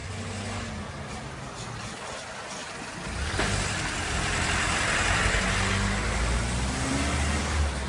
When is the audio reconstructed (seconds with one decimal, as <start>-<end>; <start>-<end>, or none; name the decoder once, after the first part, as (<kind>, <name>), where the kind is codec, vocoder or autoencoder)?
2.6-5.4 (vocoder, BigVGAN v2)